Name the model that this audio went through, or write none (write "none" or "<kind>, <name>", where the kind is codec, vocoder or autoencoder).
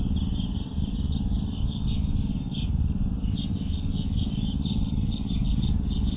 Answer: none